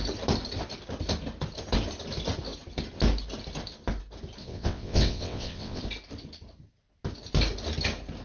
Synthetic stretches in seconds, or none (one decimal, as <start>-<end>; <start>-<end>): 4.4-5.8